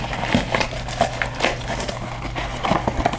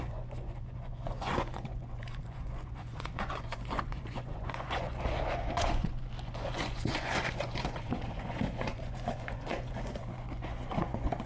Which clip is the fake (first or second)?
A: second